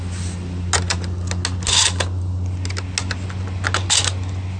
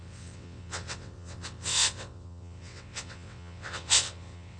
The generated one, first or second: second